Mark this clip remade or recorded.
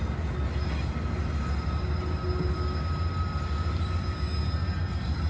recorded